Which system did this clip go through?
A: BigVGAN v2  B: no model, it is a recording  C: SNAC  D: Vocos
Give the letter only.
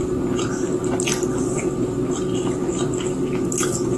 B